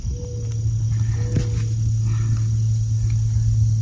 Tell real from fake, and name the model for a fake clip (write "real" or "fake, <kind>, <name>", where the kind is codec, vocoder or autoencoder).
real